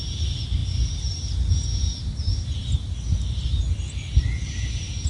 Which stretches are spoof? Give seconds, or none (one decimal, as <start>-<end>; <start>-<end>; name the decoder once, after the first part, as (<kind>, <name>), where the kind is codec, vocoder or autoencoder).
none

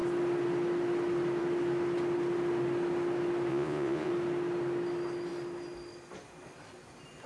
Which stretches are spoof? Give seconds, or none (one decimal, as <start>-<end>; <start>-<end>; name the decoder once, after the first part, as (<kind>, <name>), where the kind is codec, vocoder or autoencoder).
3.5-4.1 (vocoder, Vocos)